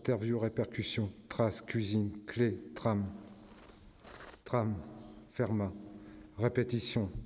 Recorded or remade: recorded